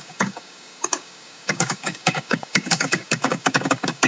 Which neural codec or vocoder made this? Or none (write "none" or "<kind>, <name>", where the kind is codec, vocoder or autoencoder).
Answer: codec, DAC